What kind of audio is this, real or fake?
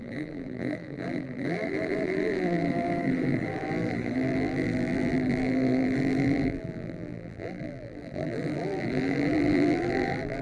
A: fake